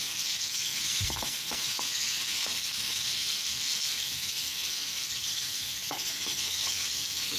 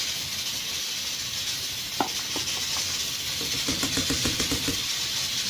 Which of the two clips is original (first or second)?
second